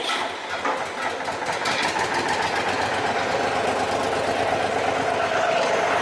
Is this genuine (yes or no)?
yes